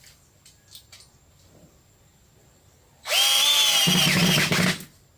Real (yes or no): yes